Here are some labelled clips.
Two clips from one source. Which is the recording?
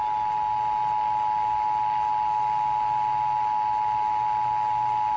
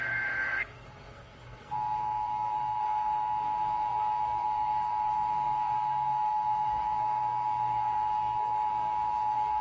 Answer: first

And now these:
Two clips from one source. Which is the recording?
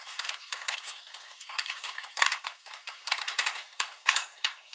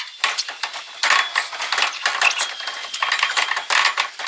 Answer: second